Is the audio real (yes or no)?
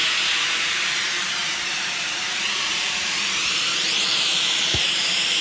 no